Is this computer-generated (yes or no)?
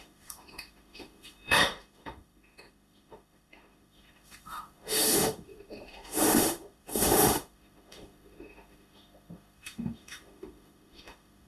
yes